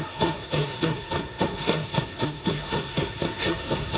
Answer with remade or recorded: remade